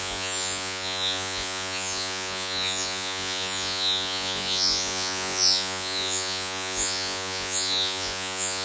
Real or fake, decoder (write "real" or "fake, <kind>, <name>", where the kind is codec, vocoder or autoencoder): fake, vocoder, Vocos